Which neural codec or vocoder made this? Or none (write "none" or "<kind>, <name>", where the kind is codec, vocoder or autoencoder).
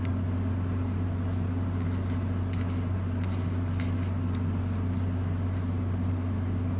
none